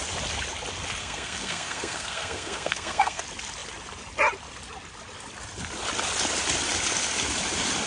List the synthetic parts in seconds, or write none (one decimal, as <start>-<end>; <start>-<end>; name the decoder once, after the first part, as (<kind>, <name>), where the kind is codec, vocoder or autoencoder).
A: 1.0-3.2 (codec, SNAC)